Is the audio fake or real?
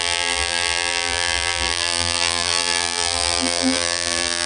fake